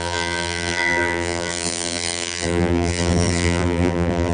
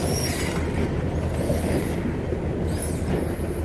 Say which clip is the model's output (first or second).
first